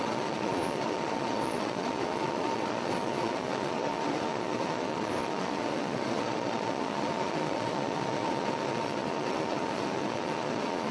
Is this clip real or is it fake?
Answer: fake